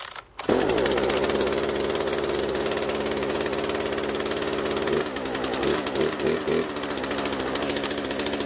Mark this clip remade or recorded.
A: recorded